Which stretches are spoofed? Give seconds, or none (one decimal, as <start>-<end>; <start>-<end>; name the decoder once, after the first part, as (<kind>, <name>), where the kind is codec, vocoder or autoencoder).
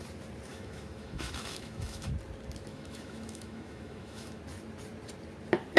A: 0.5-2.1 (autoencoder, DAC-VAE); 2.7-4.4